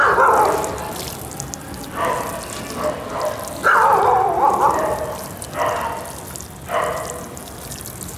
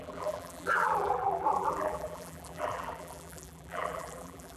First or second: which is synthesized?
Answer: second